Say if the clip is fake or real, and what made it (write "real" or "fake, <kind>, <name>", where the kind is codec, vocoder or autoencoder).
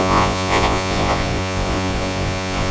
fake, vocoder, Vocos